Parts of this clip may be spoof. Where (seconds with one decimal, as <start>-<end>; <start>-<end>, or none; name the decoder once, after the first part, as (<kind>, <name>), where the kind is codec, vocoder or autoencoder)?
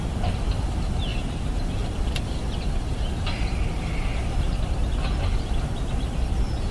1.1-1.7 (vocoder, BigVGAN v2); 4.1-4.6